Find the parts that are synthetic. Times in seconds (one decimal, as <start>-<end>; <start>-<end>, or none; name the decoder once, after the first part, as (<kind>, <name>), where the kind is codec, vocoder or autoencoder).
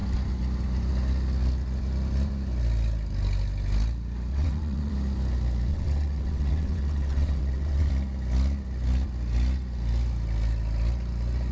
4.3-4.9 (vocoder, WaveNeXt); 5.7-7.9